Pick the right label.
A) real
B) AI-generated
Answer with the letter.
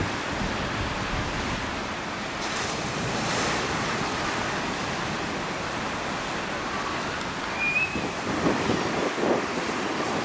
A